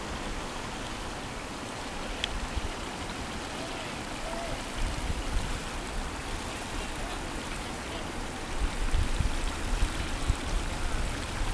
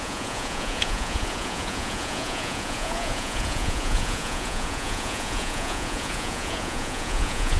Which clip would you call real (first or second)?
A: first